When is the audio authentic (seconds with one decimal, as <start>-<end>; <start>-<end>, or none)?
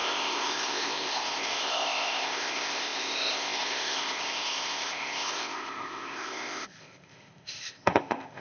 none